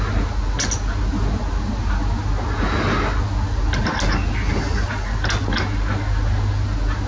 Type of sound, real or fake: real